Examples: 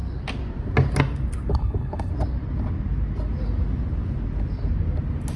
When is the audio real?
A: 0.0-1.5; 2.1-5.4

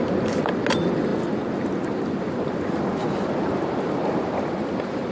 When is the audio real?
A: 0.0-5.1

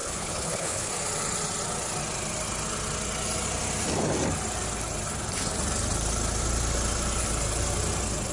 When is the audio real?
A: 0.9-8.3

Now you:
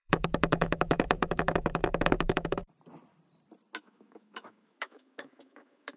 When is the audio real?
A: 2.6-3.8

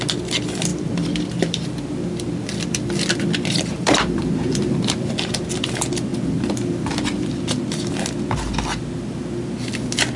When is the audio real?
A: 0.0-0.7; 5.5-6.1; 7.6-10.2

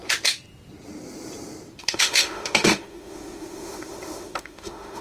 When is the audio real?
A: 0.0-1.8

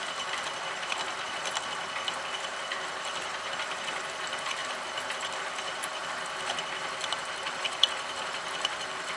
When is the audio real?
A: 4.6-5.4; 6.0-7.2